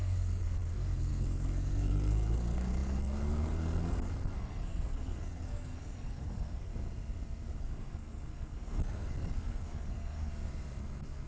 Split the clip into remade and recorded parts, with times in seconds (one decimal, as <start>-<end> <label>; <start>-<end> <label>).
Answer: 0.0-6.7 remade; 6.7-7.6 recorded; 7.6-10.3 remade; 10.3-10.8 recorded; 10.8-11.3 remade